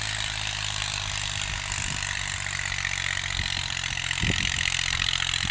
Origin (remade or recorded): recorded